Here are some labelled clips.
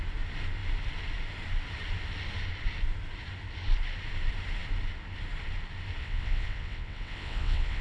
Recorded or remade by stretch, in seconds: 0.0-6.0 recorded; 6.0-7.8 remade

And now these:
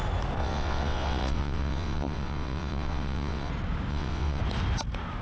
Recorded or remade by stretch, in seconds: 0.0-0.4 recorded; 0.4-3.5 remade; 3.5-3.9 recorded; 3.9-4.4 remade; 4.4-5.2 recorded

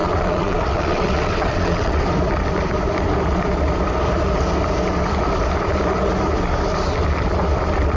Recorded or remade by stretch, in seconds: 0.0-2.0 remade; 2.0-8.0 recorded

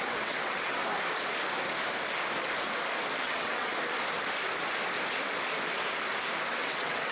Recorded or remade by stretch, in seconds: 0.0-0.8 remade; 0.8-3.2 recorded; 3.2-3.7 remade; 3.7-6.5 recorded; 6.5-7.1 remade

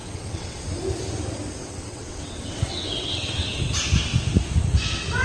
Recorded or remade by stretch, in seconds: 0.0-0.6 remade; 0.6-1.6 recorded; 1.6-3.6 remade; 3.6-5.2 recorded

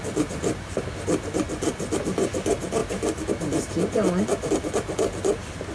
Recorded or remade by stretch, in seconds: 0.0-5.7 recorded